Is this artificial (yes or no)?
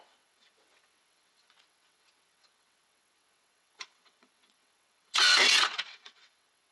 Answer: yes